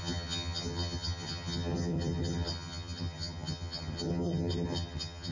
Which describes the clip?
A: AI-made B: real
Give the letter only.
A